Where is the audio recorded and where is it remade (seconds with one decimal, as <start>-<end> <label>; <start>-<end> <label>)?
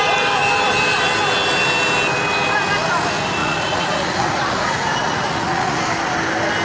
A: 0.0-3.4 recorded; 3.4-5.8 remade; 5.8-6.6 recorded